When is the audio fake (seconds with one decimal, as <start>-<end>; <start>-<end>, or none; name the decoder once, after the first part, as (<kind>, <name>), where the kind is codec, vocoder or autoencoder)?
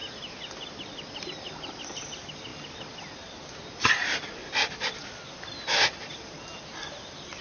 none